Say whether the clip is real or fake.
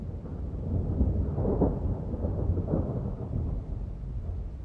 real